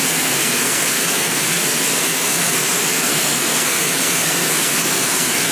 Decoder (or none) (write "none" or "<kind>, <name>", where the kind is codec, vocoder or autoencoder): codec, SNAC